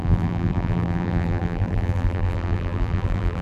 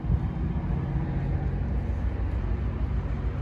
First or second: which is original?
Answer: second